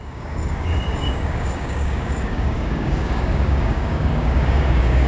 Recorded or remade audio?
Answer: remade